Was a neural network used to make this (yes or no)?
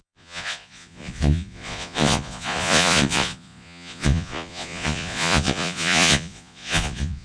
yes